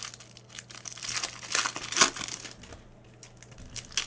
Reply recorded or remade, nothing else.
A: recorded